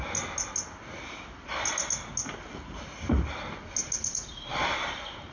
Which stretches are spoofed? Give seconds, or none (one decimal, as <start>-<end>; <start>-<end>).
none